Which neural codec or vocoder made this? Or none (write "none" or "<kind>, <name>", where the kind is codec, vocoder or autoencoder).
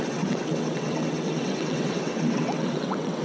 vocoder, WaveNeXt